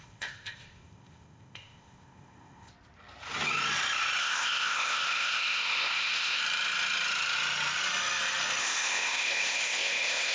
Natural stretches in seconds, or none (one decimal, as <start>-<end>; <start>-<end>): 2.7-4.2; 6.4-8.6